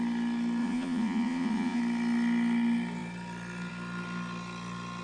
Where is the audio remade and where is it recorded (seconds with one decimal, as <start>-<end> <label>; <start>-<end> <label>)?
0.0-0.6 recorded; 0.6-1.8 remade; 1.8-5.0 recorded